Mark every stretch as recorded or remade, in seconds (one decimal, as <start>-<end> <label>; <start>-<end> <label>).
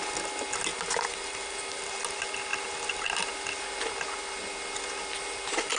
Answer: 0.0-5.8 recorded